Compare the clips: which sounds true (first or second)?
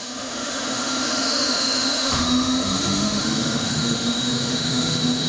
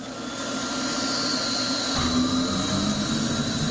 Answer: second